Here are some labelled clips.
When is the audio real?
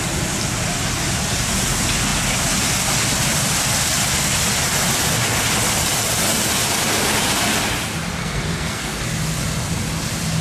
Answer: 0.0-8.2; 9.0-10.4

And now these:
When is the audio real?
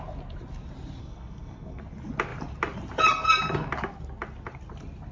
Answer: 0.0-1.0; 1.8-5.1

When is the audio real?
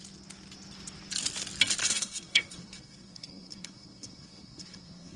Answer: 0.0-1.8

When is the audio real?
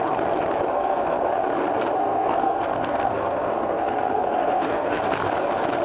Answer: 0.0-0.7; 1.3-2.0; 5.0-5.8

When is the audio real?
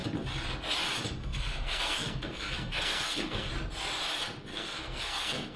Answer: 0.0-1.2; 3.5-4.5